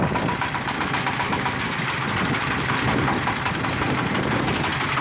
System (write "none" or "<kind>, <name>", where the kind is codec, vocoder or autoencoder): none